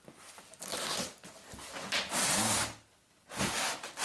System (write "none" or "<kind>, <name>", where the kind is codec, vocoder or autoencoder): none